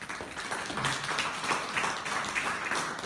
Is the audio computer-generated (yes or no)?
no